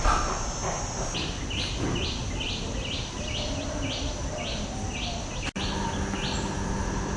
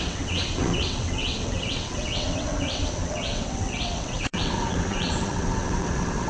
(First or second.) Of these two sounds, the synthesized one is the second